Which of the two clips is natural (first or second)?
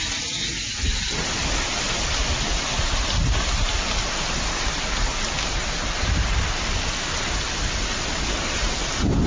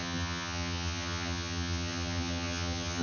first